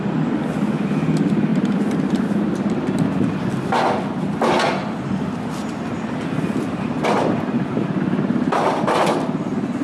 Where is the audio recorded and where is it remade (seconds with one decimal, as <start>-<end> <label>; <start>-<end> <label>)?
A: 0.0-9.8 recorded